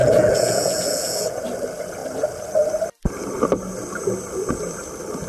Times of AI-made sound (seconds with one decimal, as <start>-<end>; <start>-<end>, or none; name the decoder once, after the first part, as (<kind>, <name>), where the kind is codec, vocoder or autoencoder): 0.0-1.4 (vocoder, Vocos)